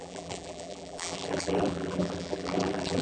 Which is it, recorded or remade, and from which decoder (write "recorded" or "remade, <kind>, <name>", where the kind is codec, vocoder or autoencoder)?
remade, vocoder, BigVGAN v2